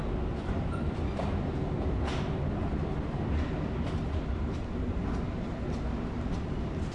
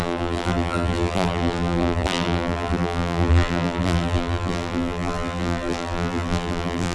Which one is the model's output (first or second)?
second